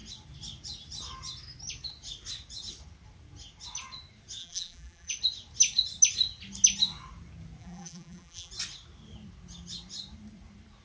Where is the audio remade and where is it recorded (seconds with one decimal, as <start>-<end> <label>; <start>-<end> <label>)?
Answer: 0.0-4.4 recorded; 4.4-5.1 remade; 5.1-7.6 recorded; 7.6-8.5 remade; 8.5-10.8 recorded